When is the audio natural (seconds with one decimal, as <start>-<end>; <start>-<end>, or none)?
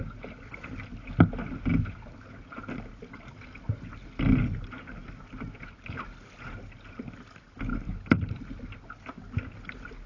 0.0-1.7; 4.0-10.1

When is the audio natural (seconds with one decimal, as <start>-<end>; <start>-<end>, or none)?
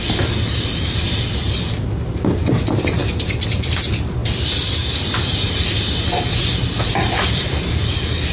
0.0-8.3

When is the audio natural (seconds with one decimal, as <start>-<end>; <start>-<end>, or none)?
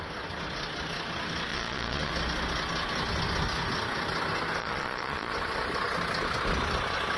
0.0-1.5; 2.1-4.6; 5.3-7.2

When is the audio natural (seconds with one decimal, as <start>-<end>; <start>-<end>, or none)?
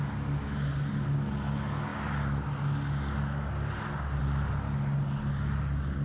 0.0-6.0